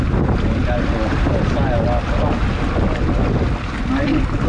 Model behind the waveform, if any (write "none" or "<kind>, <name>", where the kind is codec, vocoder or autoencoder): none